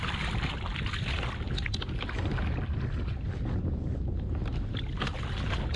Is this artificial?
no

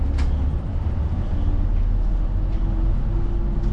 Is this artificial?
no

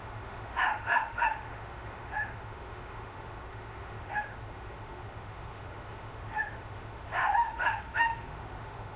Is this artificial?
yes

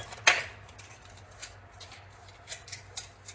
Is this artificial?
no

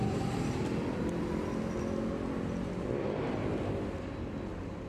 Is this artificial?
no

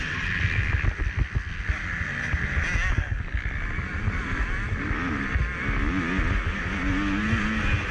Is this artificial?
no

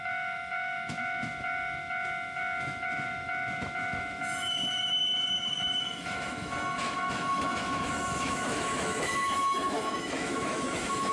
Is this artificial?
yes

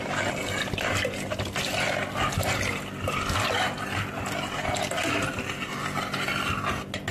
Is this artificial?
no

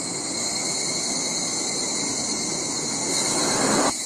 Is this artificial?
no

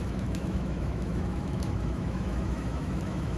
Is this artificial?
yes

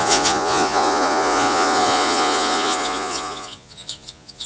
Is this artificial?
yes